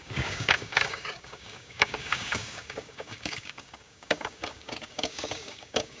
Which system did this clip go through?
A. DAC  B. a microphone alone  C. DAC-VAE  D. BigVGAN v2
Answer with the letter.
A